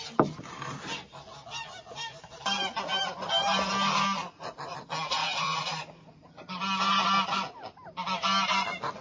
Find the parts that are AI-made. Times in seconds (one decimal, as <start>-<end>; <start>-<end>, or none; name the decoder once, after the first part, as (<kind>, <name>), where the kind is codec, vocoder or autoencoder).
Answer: 5.2-6.5 (vocoder, Vocos)